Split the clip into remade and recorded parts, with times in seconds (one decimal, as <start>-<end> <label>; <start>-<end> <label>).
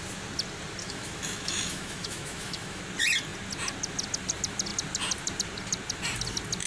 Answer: 0.0-0.8 recorded; 0.8-2.8 remade; 2.8-6.7 recorded